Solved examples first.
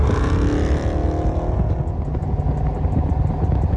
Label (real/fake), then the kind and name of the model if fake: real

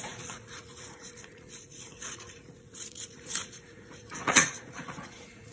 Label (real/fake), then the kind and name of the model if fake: fake, vocoder, Vocos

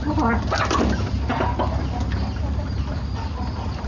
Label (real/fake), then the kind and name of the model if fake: real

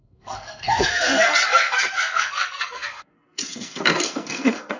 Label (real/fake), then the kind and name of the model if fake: fake, codec, SNAC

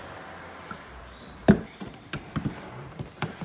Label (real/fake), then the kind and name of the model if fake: fake, vocoder, BigVGAN v2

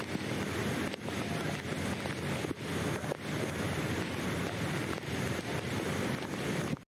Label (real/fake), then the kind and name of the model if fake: real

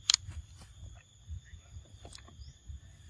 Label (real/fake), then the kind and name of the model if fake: real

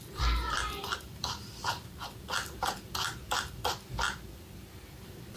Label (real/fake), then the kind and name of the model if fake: fake, vocoder, BigVGAN v2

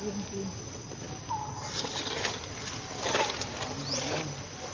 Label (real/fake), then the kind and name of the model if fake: real